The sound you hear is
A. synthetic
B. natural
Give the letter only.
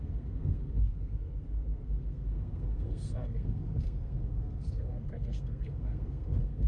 A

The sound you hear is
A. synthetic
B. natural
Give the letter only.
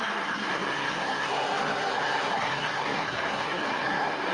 A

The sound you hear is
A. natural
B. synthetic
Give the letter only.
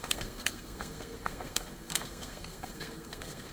B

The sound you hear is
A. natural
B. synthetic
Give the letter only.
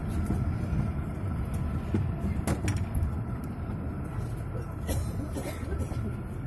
A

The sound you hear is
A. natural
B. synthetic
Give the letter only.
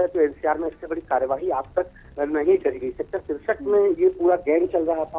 A